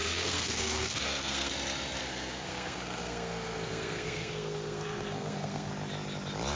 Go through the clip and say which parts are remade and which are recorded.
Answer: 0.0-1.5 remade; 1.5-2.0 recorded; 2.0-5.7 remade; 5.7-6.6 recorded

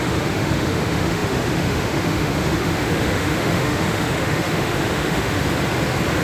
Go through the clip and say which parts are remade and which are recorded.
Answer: 0.0-5.4 remade; 5.4-6.2 recorded

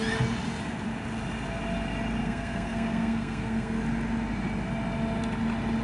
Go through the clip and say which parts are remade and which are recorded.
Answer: 0.0-2.2 recorded; 2.2-3.8 remade; 3.8-5.8 recorded